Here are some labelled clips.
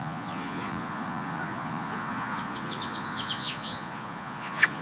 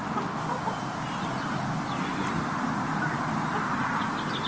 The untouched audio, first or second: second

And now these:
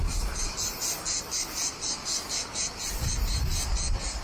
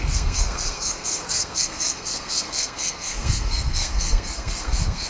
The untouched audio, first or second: first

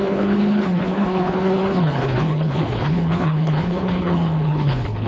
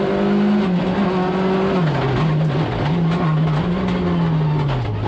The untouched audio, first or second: second